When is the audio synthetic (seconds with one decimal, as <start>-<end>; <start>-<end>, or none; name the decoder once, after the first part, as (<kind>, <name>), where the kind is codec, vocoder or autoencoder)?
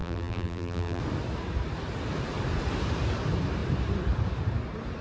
0.0-1.0 (vocoder, BigVGAN v2)